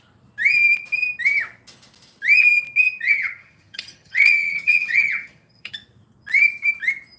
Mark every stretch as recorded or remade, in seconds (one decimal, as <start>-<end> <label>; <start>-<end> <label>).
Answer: 0.0-2.8 recorded; 2.8-5.7 remade; 5.7-7.2 recorded